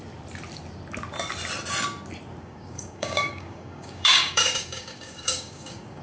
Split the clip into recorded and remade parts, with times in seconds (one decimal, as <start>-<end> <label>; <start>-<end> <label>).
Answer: 0.0-2.4 recorded; 2.4-6.0 remade